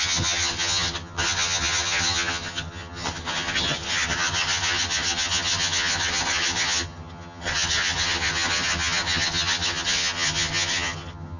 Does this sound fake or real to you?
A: fake